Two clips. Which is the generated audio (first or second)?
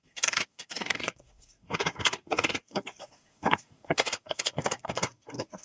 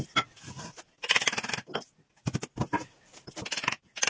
first